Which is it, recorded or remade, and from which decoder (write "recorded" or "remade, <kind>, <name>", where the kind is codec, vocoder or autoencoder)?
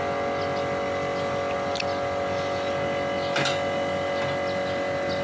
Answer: recorded